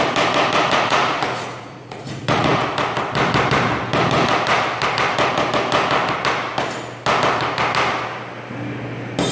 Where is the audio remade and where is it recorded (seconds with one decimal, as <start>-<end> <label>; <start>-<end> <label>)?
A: 0.0-0.6 recorded; 0.6-2.5 remade; 2.5-9.3 recorded